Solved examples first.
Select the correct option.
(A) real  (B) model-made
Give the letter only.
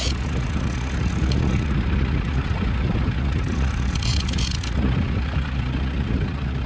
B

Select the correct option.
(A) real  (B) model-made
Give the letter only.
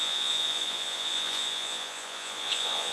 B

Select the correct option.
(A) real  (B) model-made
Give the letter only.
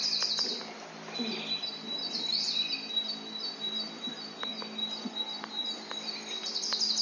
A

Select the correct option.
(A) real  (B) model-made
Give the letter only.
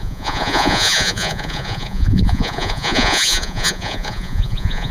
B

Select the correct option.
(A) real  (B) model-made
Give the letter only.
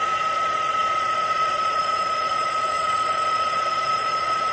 B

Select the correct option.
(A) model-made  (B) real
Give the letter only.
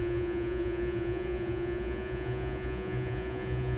A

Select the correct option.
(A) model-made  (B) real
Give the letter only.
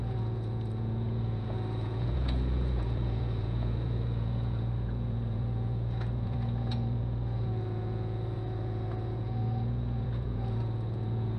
A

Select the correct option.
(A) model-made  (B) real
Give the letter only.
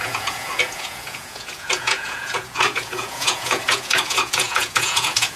A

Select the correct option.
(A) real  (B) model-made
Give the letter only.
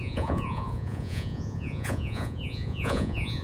B